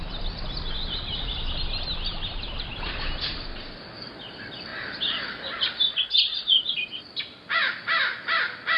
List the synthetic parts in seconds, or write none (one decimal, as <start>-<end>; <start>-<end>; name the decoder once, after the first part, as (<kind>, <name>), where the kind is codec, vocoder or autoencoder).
none